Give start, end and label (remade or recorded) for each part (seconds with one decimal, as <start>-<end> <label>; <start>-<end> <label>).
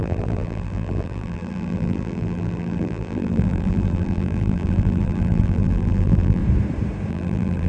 0.0-6.4 remade; 6.4-7.1 recorded; 7.1-7.7 remade